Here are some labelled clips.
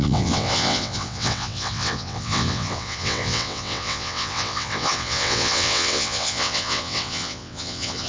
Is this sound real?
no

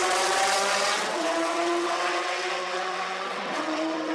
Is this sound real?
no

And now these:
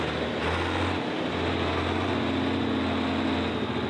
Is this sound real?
yes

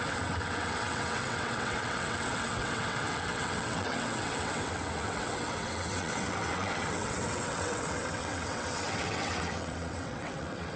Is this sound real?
no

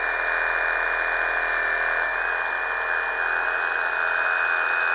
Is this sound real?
yes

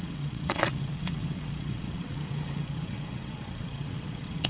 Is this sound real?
no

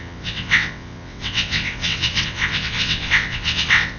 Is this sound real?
no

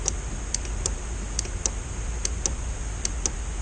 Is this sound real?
yes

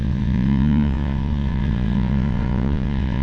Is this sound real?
no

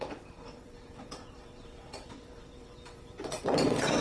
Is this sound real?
no